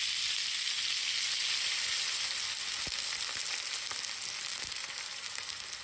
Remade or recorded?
recorded